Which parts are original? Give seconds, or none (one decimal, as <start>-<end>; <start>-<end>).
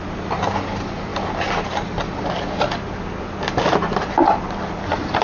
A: 0.0-5.2